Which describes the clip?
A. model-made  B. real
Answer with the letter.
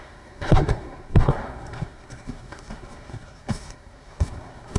A